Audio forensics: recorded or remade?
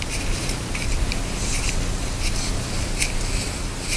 recorded